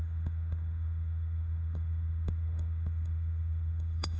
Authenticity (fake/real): fake